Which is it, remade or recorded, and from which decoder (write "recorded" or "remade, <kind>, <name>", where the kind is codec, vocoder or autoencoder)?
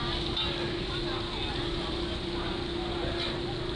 recorded